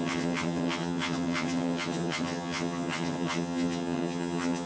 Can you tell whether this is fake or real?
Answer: fake